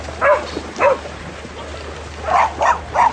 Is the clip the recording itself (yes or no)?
yes